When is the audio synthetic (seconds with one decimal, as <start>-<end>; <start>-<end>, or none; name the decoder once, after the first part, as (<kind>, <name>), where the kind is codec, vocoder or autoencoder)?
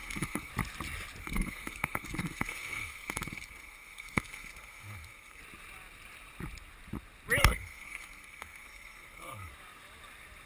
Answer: 0.0-0.5 (codec, SNAC); 1.2-5.4; 7.4-9.5